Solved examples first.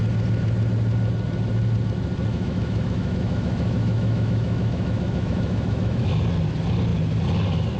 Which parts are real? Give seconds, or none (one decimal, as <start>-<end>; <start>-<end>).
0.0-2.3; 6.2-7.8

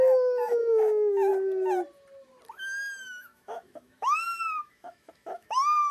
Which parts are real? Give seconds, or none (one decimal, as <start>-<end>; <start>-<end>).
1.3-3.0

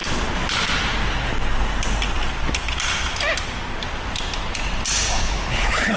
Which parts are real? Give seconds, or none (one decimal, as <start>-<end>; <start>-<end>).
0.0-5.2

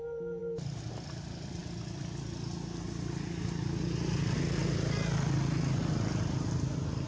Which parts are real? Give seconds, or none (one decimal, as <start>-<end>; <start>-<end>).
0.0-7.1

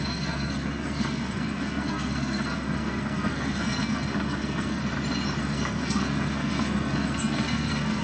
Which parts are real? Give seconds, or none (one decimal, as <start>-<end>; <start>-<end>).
4.8-5.4